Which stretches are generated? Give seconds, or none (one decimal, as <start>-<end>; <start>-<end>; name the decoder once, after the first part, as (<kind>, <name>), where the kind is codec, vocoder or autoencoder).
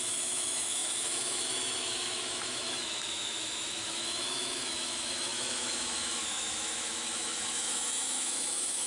0.0-8.9 (autoencoder, DAC-VAE)